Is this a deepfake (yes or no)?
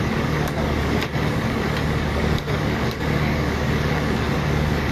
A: yes